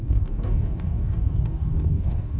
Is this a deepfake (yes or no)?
yes